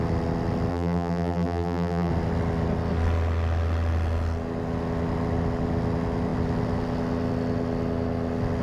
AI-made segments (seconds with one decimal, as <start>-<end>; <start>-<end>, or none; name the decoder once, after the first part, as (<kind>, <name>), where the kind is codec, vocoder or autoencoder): 0.7-2.1 (vocoder, BigVGAN v2)